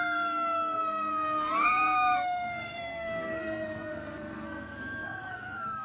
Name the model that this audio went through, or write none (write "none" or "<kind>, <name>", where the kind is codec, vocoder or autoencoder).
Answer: codec, SNAC